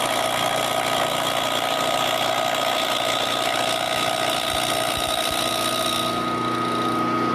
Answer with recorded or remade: recorded